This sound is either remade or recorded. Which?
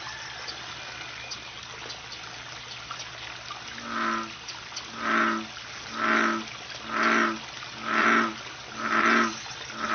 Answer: recorded